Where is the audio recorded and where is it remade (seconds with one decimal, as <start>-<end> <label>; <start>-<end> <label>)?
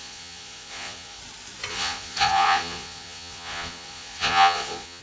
0.0-1.2 remade; 1.2-1.7 recorded; 1.7-5.0 remade